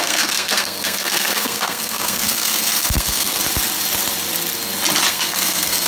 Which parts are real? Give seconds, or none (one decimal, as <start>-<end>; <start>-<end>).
3.4-5.1